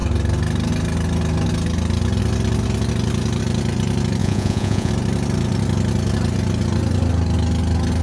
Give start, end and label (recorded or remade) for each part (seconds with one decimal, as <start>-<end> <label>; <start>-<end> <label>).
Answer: 0.0-4.2 recorded; 4.2-4.9 remade; 4.9-8.0 recorded